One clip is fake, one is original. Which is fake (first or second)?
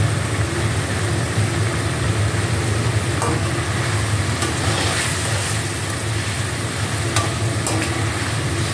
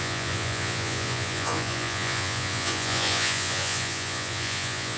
second